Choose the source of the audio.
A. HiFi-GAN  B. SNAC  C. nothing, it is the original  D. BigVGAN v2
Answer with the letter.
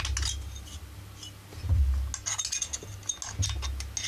C